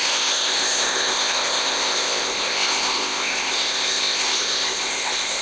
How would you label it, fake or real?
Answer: fake